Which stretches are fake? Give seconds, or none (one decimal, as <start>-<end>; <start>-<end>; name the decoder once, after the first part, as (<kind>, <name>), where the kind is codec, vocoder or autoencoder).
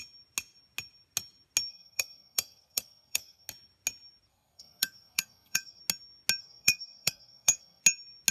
1.7-3.5 (codec, SNAC); 4.3-5.8; 6.4-7.8